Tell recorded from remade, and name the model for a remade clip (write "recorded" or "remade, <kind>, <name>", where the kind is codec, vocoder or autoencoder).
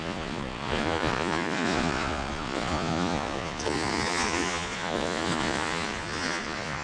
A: remade, vocoder, Vocos